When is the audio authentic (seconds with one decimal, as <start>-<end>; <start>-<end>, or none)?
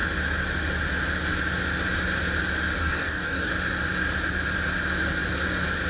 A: 0.0-2.8; 3.5-5.9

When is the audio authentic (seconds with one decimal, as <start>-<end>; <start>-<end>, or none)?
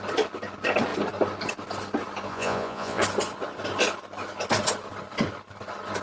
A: 0.0-2.3; 3.0-6.0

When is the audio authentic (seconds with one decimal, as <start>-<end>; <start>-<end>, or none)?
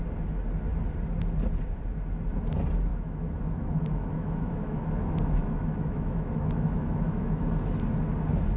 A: 0.0-2.9; 7.4-8.6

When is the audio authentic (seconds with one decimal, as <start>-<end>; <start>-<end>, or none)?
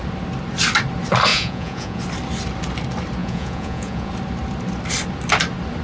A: 0.0-1.3; 2.0-3.2; 4.1-5.8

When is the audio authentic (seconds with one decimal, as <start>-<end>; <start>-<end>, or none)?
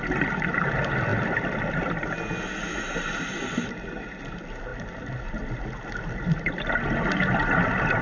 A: 0.0-8.0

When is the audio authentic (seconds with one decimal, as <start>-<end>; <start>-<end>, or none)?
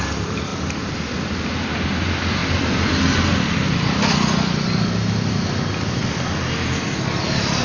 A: 0.0-0.5; 1.1-2.4; 2.9-7.6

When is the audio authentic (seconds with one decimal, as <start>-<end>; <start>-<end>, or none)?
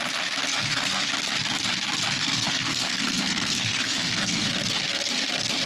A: 0.0-0.4; 1.1-2.2; 4.5-5.7